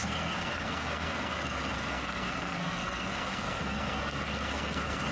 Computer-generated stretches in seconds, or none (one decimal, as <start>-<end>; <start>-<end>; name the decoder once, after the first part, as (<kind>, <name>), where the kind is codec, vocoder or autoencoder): 0.0-5.1 (codec, SNAC)